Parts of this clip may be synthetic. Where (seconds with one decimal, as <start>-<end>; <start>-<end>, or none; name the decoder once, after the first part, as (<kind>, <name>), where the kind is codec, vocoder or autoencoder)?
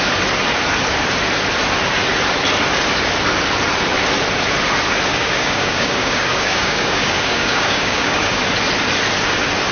5.1-8.4 (codec, DAC)